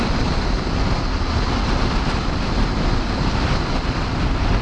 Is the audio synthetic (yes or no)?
no